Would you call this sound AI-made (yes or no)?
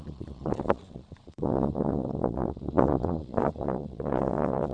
yes